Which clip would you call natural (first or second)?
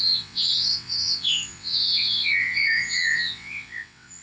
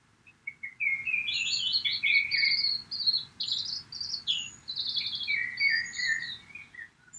second